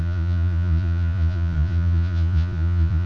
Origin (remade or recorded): remade